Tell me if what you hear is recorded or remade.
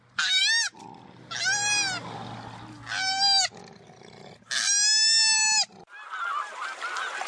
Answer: recorded